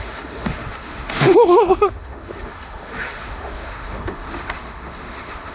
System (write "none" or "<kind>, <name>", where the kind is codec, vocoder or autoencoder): autoencoder, DAC-VAE